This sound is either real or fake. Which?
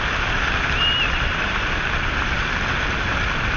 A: real